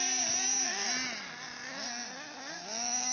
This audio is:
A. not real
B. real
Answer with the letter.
B